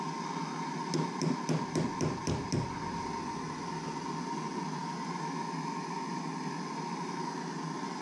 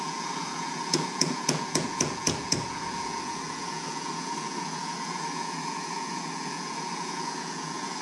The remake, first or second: second